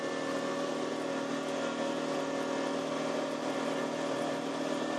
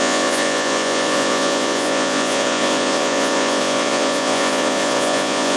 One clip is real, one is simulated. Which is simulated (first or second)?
second